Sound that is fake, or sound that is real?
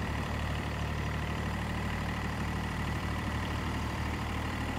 fake